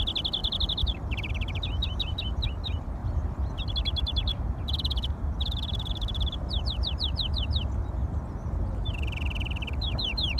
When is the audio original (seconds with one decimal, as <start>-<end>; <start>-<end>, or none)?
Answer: 0.0-0.4; 1.3-3.0; 3.6-4.3; 5.9-10.4